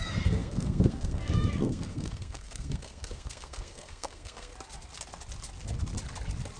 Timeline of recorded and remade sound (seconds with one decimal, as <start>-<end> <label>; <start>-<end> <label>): 0.0-4.5 remade; 4.5-6.6 recorded